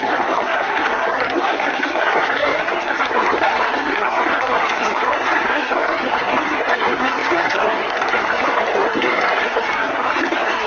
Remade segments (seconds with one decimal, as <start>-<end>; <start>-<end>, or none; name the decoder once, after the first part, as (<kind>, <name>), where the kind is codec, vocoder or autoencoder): 0.0-10.7 (codec, SNAC)